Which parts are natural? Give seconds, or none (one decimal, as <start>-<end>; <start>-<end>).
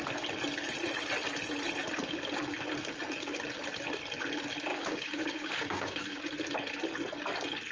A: 0.0-4.7; 6.2-7.7